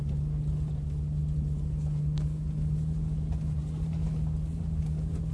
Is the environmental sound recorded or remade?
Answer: recorded